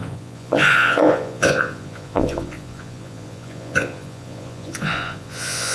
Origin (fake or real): fake